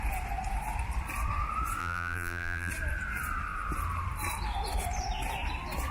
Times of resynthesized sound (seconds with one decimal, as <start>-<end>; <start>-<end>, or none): 1.8-2.7